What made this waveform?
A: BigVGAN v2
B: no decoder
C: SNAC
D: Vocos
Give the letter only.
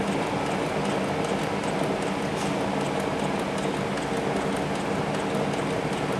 B